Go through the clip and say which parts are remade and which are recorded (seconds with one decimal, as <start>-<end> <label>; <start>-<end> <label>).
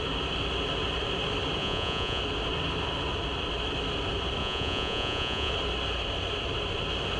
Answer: 0.0-1.6 recorded; 1.6-2.2 remade; 2.2-4.4 recorded; 4.4-5.5 remade; 5.5-7.2 recorded